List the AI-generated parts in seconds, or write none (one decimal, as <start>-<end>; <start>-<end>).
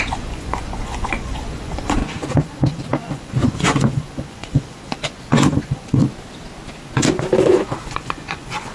0.0-6.0; 7.5-8.7